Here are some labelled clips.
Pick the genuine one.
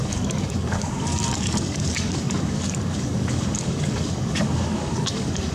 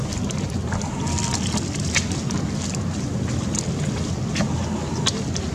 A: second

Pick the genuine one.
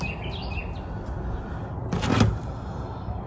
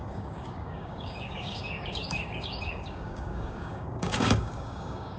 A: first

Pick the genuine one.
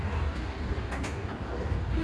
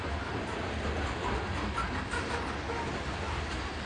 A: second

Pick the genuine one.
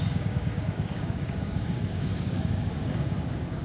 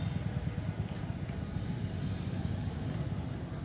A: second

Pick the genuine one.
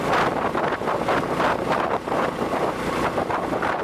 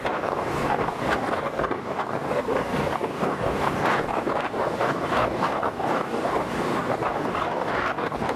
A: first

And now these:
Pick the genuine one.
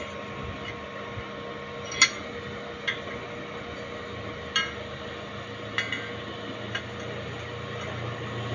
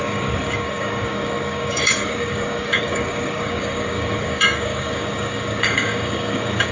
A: first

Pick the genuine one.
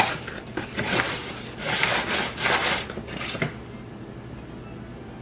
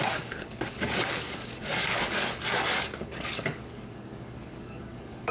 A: first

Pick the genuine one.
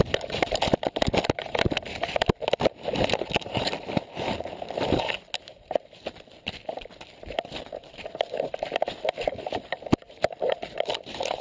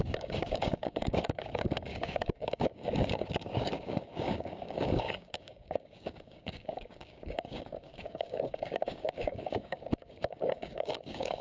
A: first